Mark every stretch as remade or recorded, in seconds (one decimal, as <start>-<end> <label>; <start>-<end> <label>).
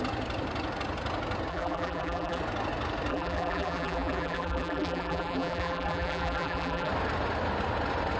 0.0-1.5 recorded; 1.5-2.4 remade; 2.4-3.1 recorded; 3.1-6.9 remade; 6.9-8.2 recorded